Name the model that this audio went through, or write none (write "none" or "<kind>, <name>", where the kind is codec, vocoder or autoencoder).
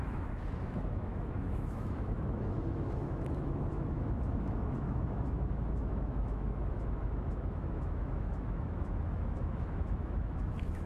autoencoder, DAC-VAE